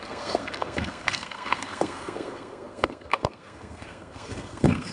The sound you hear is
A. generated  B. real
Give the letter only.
A